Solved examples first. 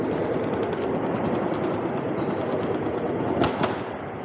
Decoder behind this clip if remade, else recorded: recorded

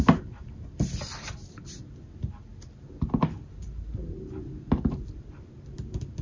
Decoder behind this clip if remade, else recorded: recorded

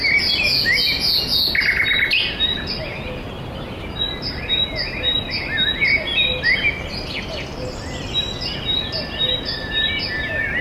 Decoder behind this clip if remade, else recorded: recorded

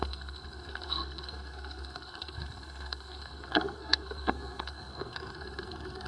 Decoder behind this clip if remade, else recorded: remade, codec, SNAC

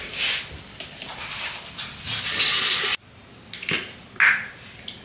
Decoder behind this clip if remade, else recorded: recorded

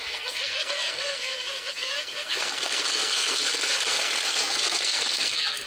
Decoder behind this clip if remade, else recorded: remade, codec, SNAC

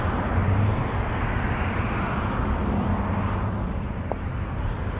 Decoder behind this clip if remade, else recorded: recorded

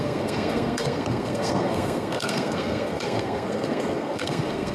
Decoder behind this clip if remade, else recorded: remade, codec, SNAC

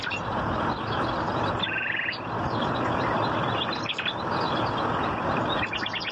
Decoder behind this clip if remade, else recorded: recorded